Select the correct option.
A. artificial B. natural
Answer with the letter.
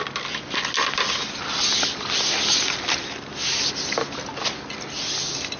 B